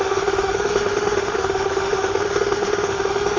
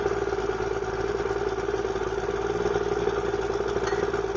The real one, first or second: second